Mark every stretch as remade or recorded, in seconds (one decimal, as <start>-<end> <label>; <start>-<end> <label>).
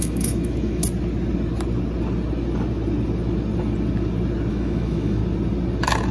0.0-0.8 remade; 0.8-4.5 recorded; 4.5-5.2 remade; 5.2-6.1 recorded